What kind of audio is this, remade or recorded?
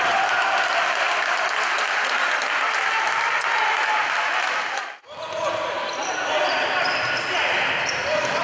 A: recorded